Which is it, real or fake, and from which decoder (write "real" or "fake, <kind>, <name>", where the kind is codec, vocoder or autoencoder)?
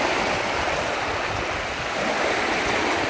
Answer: real